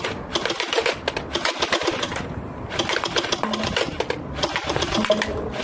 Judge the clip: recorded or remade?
recorded